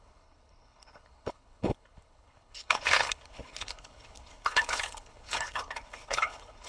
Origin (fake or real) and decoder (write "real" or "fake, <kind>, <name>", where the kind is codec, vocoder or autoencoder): fake, codec, HILCodec